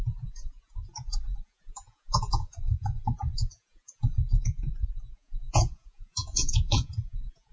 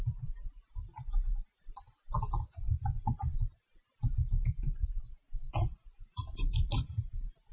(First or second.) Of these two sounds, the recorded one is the second